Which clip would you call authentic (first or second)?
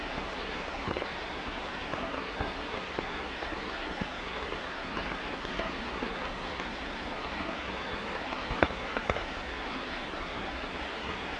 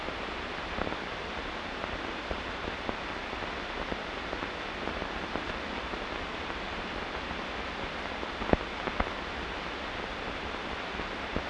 second